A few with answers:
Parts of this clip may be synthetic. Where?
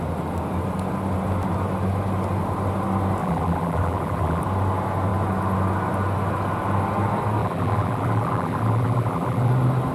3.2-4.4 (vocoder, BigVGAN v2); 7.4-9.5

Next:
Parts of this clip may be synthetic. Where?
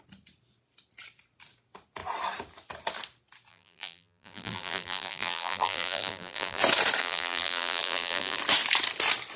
3.5-6.6 (vocoder, BigVGAN v2); 7.0-8.4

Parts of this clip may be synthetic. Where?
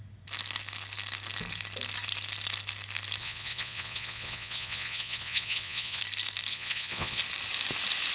3.2-6.0 (vocoder, Vocos); 6.5-7.2